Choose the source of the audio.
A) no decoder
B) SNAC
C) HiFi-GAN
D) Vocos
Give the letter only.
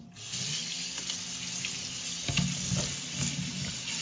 A